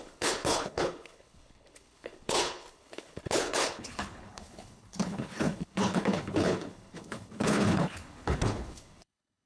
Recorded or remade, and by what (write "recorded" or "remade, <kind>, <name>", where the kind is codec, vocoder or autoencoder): remade, codec, HILCodec